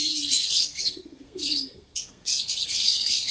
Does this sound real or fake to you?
fake